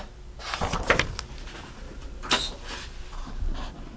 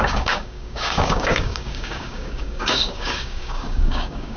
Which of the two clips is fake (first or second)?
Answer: second